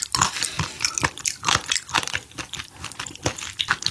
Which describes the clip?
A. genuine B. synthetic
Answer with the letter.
A